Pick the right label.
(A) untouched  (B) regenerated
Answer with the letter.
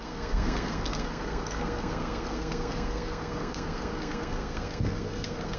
B